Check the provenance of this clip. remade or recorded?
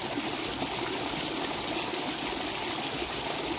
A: recorded